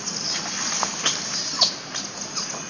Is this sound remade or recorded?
recorded